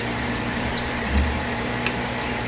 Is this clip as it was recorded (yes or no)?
no